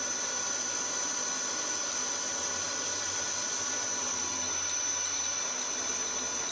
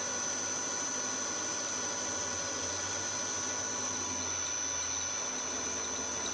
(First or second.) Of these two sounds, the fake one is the first